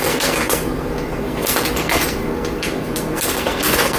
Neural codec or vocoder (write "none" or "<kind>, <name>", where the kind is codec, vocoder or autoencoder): codec, SNAC